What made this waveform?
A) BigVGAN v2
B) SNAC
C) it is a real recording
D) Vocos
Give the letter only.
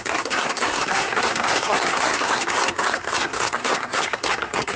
B